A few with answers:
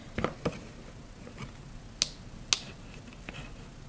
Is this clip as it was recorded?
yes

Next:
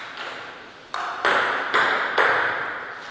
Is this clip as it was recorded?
yes